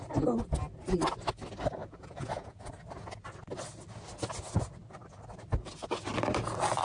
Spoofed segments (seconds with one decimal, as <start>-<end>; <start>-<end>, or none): 1.8-2.7